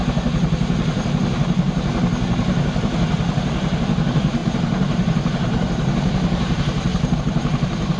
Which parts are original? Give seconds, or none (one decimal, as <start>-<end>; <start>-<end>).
0.0-3.8